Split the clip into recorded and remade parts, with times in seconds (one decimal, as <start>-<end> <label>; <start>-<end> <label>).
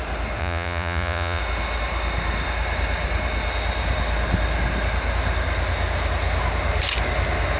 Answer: 0.0-0.4 recorded; 0.4-1.4 remade; 1.4-7.6 recorded